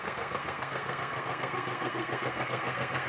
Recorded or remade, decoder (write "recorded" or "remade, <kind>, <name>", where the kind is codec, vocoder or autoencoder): remade, codec, SNAC